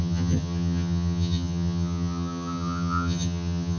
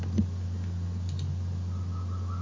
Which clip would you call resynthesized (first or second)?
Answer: first